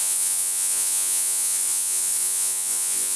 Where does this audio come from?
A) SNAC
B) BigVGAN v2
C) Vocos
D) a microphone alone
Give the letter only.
C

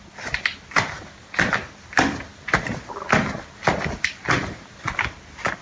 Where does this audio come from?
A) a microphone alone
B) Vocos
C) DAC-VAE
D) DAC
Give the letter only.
A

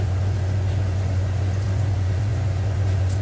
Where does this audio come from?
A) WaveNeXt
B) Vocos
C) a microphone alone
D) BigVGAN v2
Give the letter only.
B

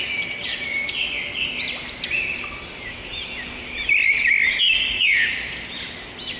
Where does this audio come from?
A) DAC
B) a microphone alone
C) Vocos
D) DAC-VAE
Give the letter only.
B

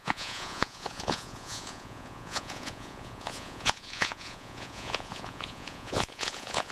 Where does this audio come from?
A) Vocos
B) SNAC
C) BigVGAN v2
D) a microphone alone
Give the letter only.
A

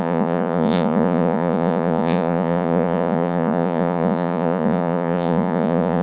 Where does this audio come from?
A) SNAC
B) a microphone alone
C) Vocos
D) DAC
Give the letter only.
C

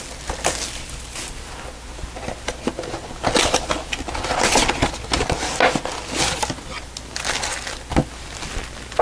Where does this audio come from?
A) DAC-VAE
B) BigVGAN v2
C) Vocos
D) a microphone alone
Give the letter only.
D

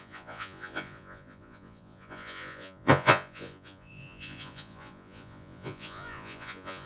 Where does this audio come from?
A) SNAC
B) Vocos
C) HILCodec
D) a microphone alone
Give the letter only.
B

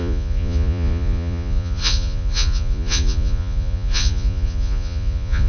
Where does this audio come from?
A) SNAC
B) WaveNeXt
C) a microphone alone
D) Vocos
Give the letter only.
D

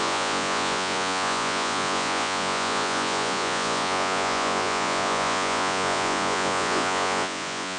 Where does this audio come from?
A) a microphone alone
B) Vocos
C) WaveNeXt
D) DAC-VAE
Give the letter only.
B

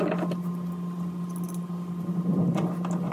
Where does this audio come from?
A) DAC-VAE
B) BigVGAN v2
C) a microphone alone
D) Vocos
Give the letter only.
C